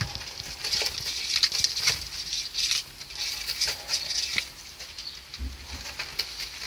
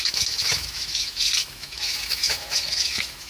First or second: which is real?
first